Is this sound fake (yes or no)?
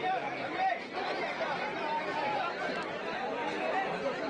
no